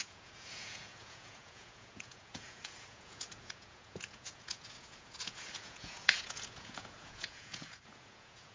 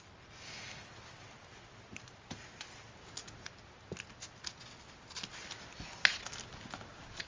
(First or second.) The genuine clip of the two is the second